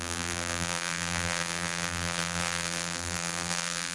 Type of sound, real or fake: fake